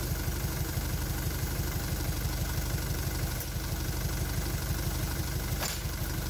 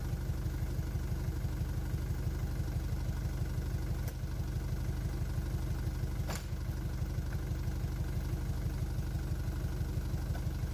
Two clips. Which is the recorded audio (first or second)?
second